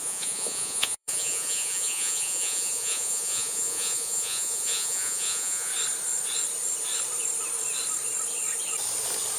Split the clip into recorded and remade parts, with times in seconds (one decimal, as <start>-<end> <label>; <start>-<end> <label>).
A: 0.0-5.7 remade; 5.7-9.4 recorded